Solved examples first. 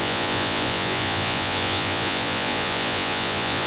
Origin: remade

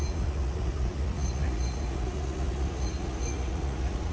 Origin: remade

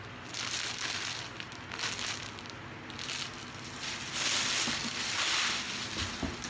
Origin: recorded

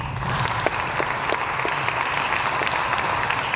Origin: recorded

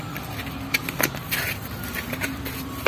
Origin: recorded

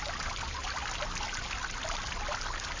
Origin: recorded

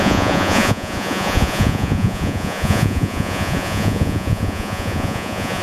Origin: remade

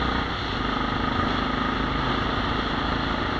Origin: recorded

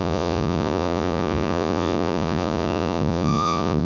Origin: remade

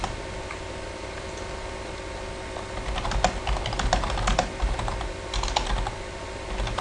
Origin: recorded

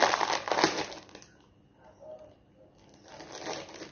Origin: recorded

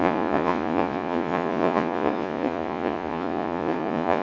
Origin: remade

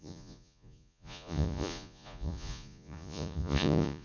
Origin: remade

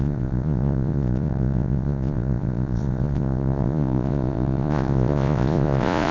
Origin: remade